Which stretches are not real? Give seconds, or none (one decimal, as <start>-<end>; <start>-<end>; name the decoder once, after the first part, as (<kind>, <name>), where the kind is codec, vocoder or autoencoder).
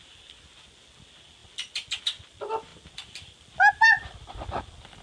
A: none